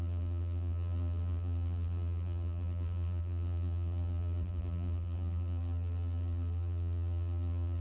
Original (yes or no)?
no